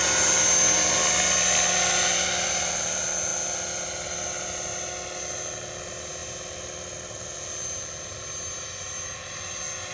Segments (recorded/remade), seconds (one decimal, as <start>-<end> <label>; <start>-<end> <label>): 0.0-9.9 recorded